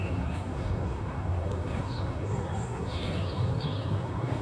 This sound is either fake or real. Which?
fake